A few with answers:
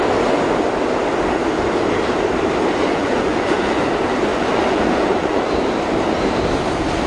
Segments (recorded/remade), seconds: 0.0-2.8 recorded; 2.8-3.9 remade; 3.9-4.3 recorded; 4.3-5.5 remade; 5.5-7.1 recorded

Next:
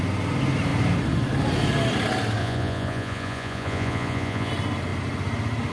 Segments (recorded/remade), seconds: 0.0-2.4 recorded; 2.4-4.5 remade; 4.5-5.7 recorded

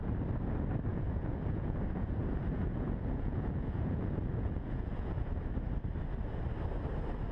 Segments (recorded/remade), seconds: 0.0-0.9 recorded; 0.9-5.3 remade; 5.3-7.3 recorded

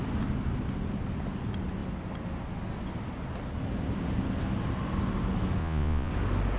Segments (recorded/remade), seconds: 0.0-5.6 recorded; 5.6-6.1 remade; 6.1-6.6 recorded